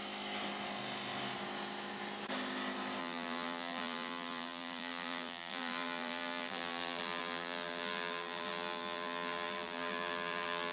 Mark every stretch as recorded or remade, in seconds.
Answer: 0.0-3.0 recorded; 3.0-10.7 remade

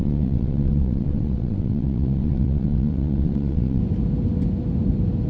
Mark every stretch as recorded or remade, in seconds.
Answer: 0.0-3.8 remade; 3.8-5.3 recorded

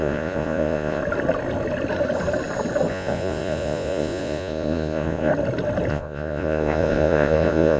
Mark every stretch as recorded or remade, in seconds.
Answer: 0.0-1.0 remade; 1.0-2.9 recorded; 2.9-5.3 remade; 5.3-5.9 recorded; 5.9-7.8 remade